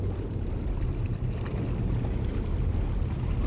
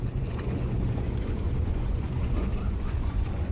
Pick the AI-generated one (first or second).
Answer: second